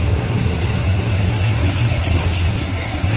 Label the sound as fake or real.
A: fake